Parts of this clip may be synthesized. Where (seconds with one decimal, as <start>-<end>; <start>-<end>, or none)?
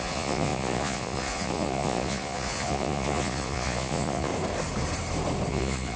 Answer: 0.0-4.3; 5.5-6.0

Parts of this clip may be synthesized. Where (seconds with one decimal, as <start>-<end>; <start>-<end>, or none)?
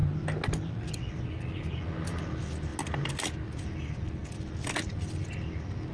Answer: none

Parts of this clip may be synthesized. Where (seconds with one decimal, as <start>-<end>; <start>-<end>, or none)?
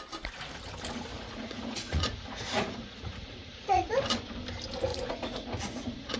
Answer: 1.1-3.8; 4.9-6.2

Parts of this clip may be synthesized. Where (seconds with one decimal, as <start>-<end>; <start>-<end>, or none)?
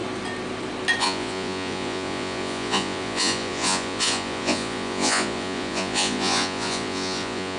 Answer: 1.0-7.6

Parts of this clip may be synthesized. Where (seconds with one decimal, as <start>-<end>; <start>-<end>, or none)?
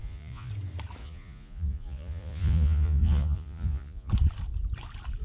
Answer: 0.0-0.5; 1.0-4.1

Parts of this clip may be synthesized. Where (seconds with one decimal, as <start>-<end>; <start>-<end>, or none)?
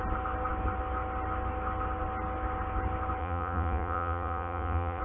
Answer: 3.2-5.0